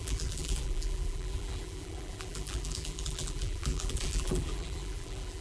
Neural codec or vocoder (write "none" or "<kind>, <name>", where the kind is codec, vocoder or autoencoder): vocoder, BigVGAN v2